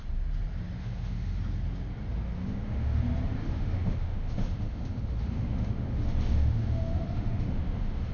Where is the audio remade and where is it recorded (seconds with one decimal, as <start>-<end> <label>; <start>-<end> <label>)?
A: 0.0-0.8 recorded; 0.8-1.4 remade; 1.4-2.4 recorded; 2.4-3.0 remade; 3.0-3.4 recorded; 3.4-8.1 remade